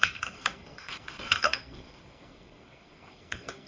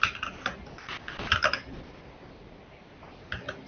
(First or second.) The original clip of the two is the second